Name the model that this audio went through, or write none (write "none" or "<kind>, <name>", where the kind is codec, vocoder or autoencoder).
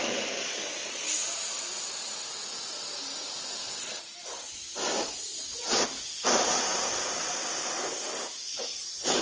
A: none